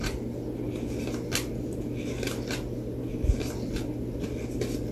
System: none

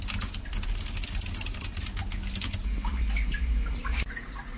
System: none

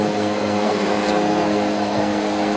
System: codec, SNAC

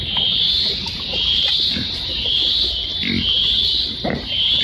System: none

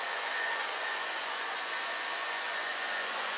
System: vocoder, Vocos